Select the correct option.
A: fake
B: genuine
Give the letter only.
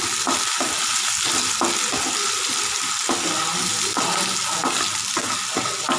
B